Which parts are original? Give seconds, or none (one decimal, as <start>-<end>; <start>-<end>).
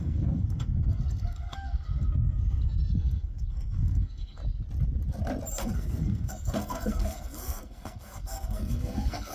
4.4-5.5